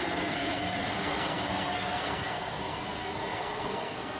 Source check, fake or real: fake